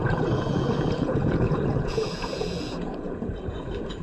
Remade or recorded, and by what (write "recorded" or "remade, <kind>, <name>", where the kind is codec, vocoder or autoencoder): remade, vocoder, Vocos